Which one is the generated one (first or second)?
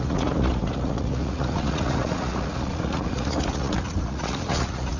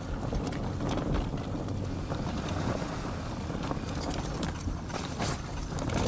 first